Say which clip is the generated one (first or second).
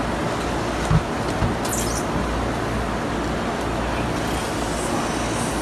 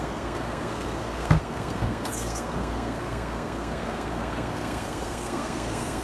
second